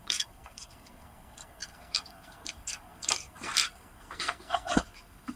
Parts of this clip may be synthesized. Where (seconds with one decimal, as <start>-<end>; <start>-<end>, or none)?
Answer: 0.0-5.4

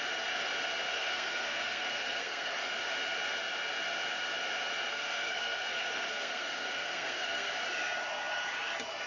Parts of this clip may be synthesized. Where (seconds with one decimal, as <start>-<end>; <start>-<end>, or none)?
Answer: 0.9-2.7; 4.9-7.5

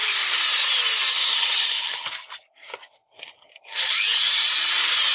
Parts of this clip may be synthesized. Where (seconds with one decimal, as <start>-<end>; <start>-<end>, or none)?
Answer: none

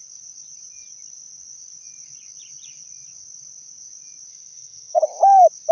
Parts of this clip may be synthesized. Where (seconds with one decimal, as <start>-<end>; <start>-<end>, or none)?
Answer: 4.3-5.0

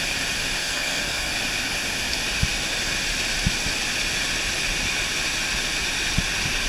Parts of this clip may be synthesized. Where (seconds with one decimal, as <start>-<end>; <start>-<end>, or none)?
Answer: 0.6-1.3

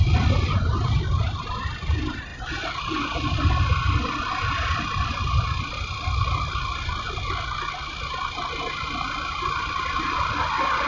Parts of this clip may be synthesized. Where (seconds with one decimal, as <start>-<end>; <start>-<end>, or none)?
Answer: none